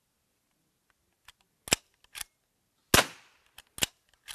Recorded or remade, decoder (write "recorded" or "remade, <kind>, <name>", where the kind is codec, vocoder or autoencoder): recorded